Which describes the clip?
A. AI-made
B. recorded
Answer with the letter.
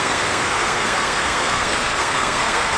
A